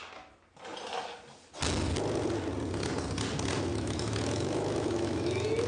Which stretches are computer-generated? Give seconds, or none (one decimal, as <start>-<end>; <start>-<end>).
3.7-5.7